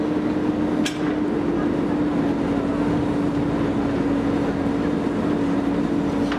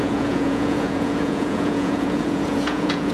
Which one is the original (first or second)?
first